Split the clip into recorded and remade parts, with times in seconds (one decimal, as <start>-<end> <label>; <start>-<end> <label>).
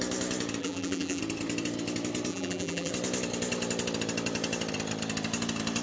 0.0-0.6 recorded; 0.6-1.2 remade; 1.2-2.3 recorded; 2.3-2.9 remade; 2.9-5.8 recorded